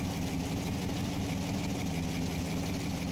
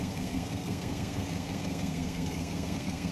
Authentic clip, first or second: first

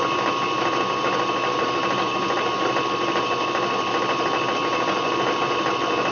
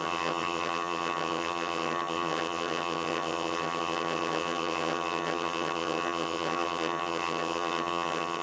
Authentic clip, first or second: first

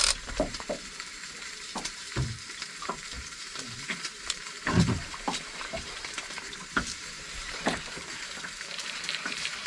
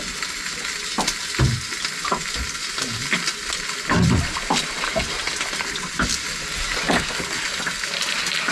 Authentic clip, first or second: second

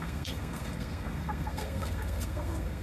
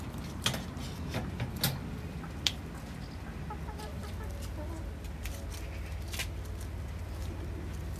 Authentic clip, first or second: second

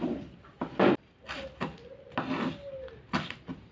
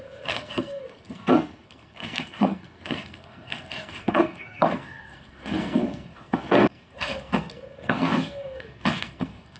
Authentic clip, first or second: first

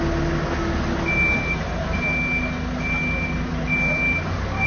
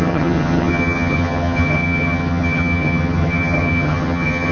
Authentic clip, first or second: first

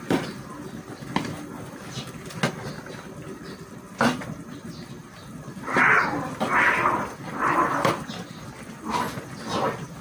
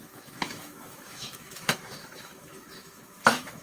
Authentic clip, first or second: first